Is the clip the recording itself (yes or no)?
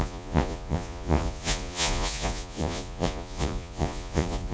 no